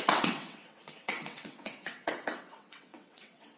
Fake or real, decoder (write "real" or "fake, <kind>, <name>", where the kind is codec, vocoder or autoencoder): fake, vocoder, WaveNeXt